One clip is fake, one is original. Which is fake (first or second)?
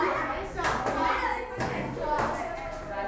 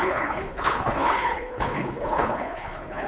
second